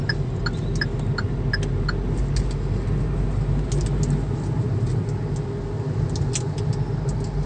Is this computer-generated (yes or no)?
no